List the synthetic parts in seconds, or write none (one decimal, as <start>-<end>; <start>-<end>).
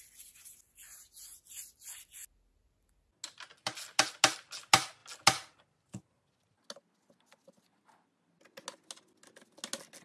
none